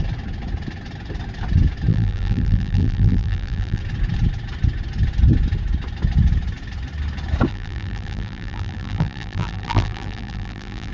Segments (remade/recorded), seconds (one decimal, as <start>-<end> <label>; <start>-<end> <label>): 0.0-1.9 recorded; 1.9-3.8 remade; 3.8-7.5 recorded; 7.5-10.9 remade